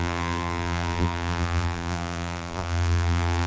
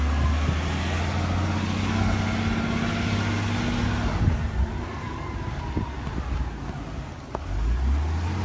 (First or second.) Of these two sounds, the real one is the second